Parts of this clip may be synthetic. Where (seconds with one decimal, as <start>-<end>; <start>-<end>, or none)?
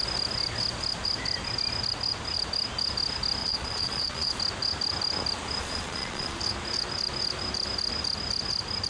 3.4-4.4; 5.6-6.4